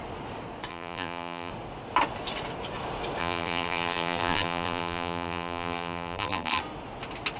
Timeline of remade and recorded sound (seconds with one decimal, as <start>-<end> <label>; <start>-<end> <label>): 0.0-0.7 recorded; 0.7-1.5 remade; 1.5-3.2 recorded; 3.2-6.6 remade; 6.6-7.4 recorded